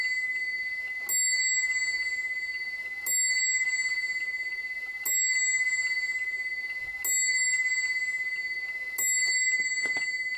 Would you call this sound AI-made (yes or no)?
no